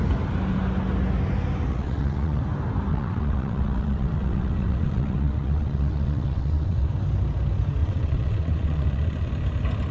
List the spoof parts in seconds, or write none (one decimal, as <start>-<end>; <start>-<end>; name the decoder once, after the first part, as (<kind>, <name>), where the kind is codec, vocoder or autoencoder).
1.7-2.4 (vocoder, WaveNeXt); 2.9-6.9; 7.8-9.3